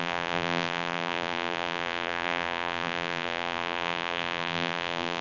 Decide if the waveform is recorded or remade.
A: remade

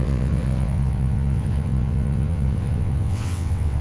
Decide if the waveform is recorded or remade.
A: remade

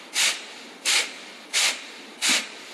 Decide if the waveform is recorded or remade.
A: recorded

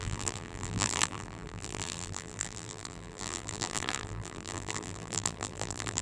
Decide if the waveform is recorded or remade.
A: remade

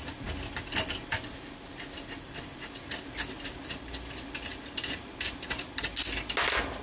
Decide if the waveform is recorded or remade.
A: recorded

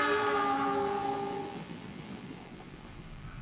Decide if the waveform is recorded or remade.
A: remade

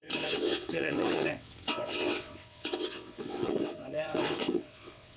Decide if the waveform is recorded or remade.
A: remade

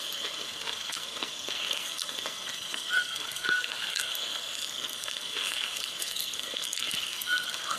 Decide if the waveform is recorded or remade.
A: remade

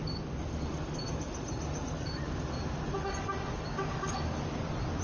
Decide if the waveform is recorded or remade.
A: recorded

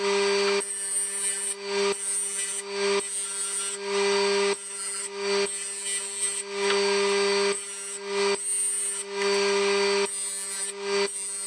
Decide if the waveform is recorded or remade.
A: recorded